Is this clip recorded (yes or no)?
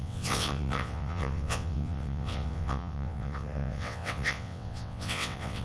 no